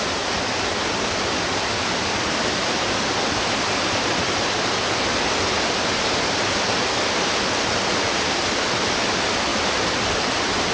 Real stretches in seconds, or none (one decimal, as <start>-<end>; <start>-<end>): 0.0-9.5; 10.2-10.7